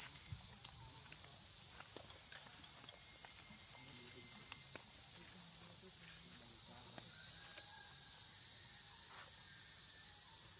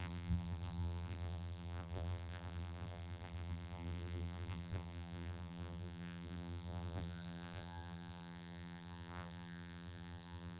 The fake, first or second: second